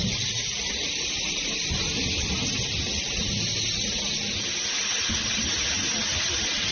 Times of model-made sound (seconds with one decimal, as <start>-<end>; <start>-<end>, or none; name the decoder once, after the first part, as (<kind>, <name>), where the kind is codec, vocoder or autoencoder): 0.0-1.9 (vocoder, BigVGAN v2)

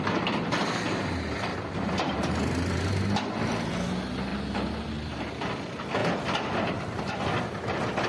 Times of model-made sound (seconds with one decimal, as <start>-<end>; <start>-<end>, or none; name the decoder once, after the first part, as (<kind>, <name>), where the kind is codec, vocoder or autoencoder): 1.5-2.9 (vocoder, BigVGAN v2); 4.3-5.3; 6.0-7.1

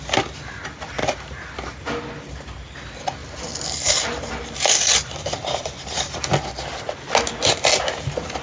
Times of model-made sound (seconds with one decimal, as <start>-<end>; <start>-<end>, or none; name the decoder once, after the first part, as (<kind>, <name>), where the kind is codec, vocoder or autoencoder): 3.2-6.3 (vocoder, BigVGAN v2)

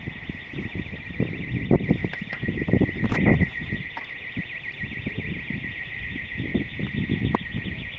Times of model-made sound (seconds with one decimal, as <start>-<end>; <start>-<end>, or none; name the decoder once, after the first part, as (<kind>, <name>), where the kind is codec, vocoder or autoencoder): none

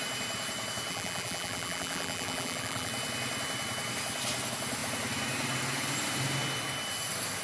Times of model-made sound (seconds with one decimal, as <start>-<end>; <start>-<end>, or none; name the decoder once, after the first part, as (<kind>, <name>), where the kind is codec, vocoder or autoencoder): 0.9-2.9 (vocoder, BigVGAN v2)

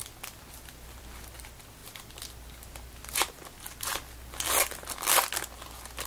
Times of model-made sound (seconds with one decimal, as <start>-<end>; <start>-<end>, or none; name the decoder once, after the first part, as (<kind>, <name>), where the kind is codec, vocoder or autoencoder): none

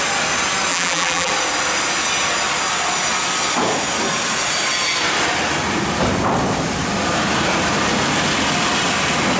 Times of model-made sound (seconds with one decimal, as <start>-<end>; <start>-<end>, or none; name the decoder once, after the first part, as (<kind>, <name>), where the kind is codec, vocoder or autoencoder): 0.7-1.3 (vocoder, BigVGAN v2)

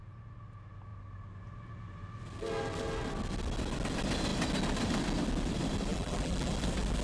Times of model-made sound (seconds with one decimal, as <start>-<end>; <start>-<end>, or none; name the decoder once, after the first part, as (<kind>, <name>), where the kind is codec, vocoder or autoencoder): 5.9-6.5 (vocoder, BigVGAN v2)